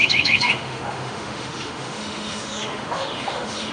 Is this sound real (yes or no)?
no